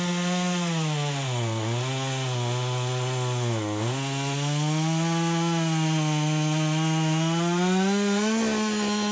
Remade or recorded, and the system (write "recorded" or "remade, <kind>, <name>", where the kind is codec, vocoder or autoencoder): recorded